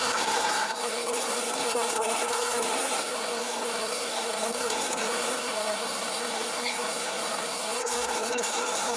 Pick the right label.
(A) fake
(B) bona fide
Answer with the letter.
A